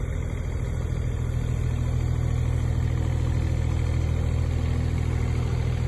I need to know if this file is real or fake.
real